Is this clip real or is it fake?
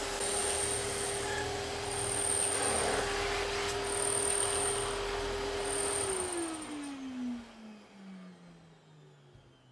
real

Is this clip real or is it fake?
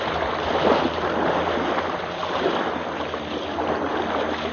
real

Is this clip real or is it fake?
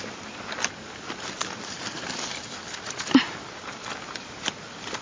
real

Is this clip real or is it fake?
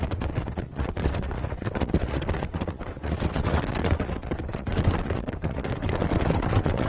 fake